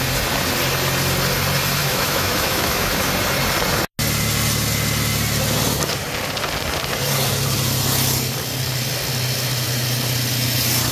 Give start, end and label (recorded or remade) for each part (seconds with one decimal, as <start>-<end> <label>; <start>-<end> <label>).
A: 0.0-1.8 recorded; 1.8-3.1 remade; 3.1-10.9 recorded